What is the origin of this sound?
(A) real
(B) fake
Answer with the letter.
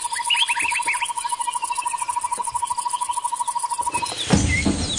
B